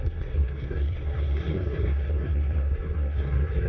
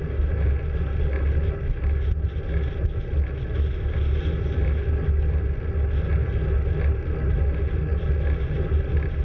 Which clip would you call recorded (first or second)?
second